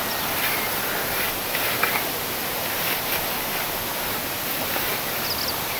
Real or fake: real